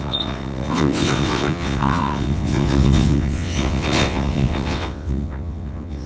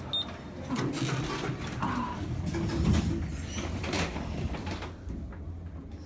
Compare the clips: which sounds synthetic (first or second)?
first